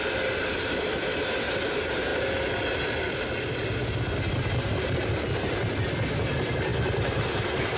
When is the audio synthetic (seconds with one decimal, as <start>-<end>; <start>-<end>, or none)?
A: none